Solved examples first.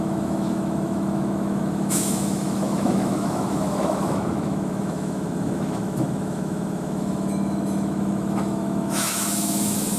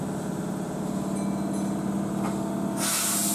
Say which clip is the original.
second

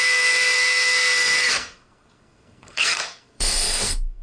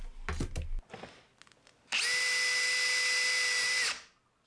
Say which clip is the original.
second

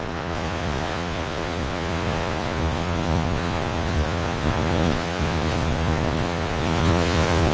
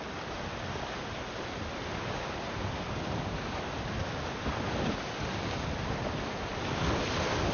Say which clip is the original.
second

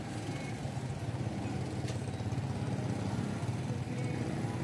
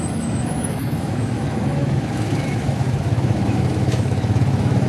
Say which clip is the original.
first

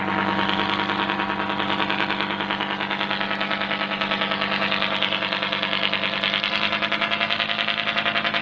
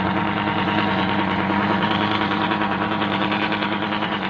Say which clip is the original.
first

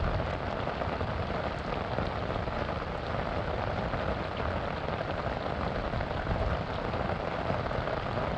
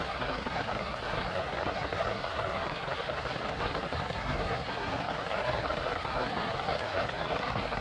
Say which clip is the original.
first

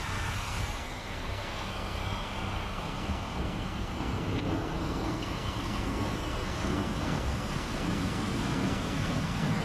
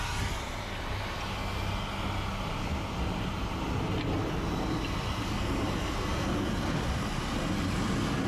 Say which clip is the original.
second